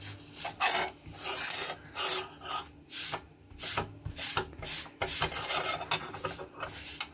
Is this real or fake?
real